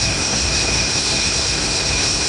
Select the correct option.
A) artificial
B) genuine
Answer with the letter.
A